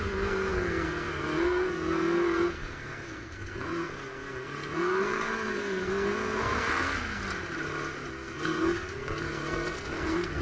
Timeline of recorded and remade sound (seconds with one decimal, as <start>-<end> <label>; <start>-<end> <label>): 0.0-7.2 remade; 7.2-8.1 recorded; 8.1-10.4 remade